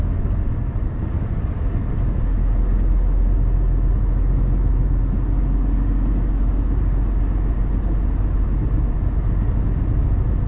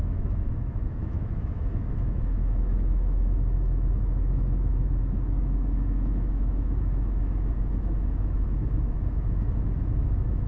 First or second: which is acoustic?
first